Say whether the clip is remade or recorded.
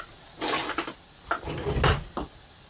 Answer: recorded